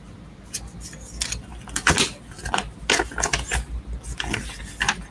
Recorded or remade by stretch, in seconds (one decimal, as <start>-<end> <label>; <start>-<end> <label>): 0.0-5.1 recorded